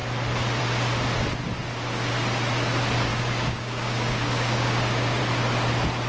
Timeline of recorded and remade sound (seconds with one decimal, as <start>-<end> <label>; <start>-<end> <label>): 0.0-3.1 recorded; 3.1-5.2 remade; 5.2-6.1 recorded